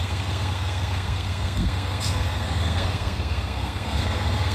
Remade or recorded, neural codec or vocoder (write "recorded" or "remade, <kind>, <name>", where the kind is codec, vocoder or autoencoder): remade, codec, SNAC